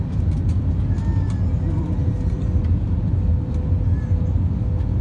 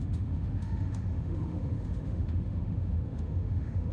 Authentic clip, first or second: first